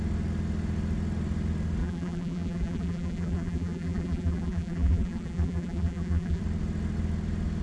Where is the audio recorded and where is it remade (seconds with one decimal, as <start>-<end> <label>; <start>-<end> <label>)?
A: 0.0-1.8 recorded; 1.8-6.4 remade; 6.4-7.6 recorded